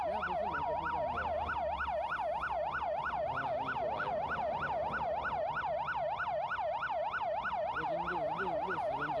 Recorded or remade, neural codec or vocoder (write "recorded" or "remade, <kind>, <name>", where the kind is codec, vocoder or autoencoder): recorded